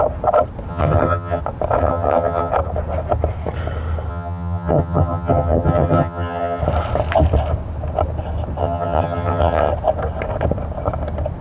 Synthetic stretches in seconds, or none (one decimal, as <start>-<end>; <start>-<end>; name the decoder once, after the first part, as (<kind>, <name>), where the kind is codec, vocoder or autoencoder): 0.7-1.4 (vocoder, HiFi-GAN); 1.8-2.5; 4.1-6.6; 8.6-9.7